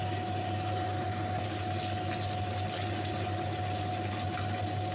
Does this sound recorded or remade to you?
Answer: recorded